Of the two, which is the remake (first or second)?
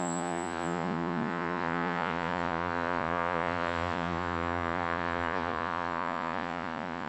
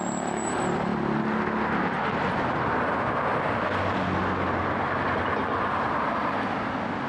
first